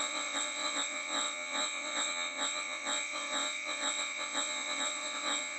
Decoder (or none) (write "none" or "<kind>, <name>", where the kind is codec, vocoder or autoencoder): vocoder, WaveNeXt